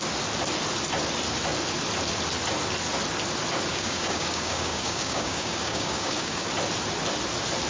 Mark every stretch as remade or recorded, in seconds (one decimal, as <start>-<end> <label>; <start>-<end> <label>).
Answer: 0.0-3.7 recorded; 3.7-6.5 remade; 6.5-7.7 recorded